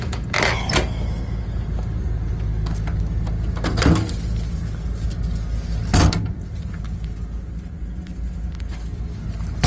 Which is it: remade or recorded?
recorded